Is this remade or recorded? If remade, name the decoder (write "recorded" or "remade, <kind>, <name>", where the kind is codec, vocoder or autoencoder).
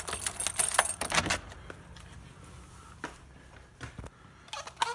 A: recorded